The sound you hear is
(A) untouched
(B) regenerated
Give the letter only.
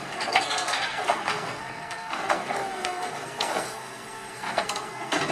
B